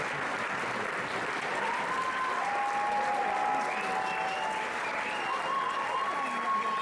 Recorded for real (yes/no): yes